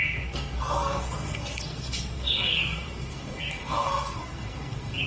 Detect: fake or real fake